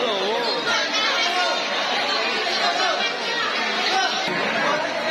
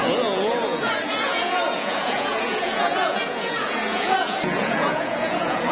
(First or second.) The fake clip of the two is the second